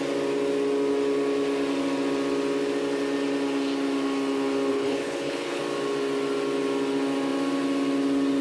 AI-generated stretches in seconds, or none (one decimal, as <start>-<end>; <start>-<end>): 4.7-5.6